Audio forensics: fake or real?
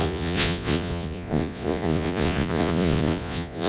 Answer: fake